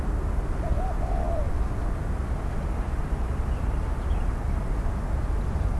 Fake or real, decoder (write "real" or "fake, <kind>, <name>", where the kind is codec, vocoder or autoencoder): real